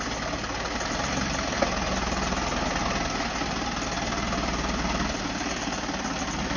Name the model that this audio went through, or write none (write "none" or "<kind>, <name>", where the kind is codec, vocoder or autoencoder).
none